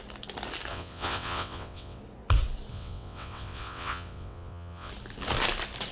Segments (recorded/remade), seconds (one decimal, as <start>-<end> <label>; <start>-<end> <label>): 0.0-0.7 recorded; 0.7-2.0 remade; 2.0-2.7 recorded; 2.7-4.9 remade; 4.9-5.9 recorded